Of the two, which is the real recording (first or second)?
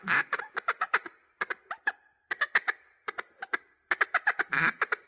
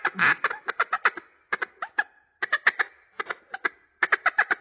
second